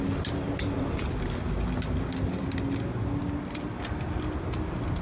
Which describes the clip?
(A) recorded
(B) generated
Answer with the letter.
A